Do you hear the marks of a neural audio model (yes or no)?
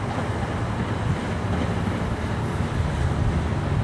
no